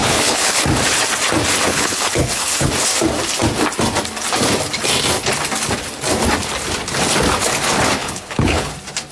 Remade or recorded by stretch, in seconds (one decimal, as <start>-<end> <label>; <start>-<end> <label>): 0.0-0.6 remade; 0.6-1.7 recorded; 1.7-2.7 remade; 2.7-8.0 recorded; 8.0-8.7 remade; 8.7-9.1 recorded